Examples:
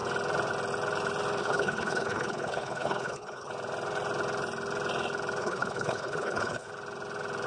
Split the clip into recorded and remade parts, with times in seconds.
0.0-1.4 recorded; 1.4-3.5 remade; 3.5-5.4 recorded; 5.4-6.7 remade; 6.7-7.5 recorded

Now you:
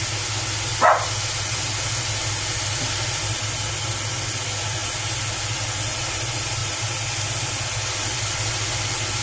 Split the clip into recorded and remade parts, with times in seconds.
0.0-9.2 recorded

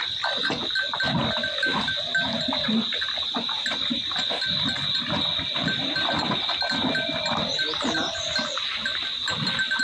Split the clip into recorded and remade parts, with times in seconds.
0.0-9.8 recorded

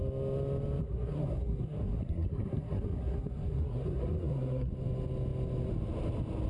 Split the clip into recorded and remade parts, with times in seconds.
0.0-0.8 recorded; 0.8-4.7 remade; 4.7-6.5 recorded

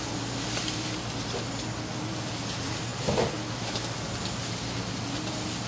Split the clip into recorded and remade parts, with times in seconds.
0.0-5.7 recorded

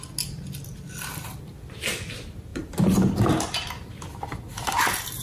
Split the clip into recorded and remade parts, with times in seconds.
0.0-5.2 recorded